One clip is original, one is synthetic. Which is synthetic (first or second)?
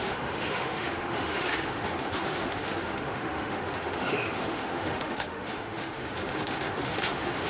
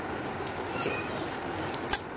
first